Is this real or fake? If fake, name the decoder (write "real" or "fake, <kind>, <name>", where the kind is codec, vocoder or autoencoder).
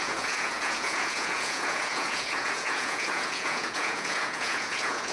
fake, vocoder, Vocos